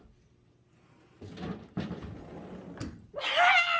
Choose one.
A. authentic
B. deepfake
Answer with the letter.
A